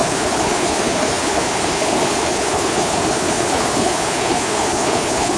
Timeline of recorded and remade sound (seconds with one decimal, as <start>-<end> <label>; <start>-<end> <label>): 0.0-5.4 remade